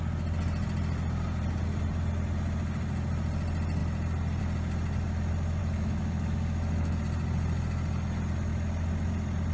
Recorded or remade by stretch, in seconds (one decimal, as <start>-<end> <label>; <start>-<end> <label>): 0.0-5.6 recorded; 5.6-7.0 remade; 7.0-9.5 recorded